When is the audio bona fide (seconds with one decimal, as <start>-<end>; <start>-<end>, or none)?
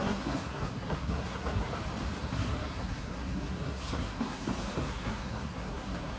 1.7-2.2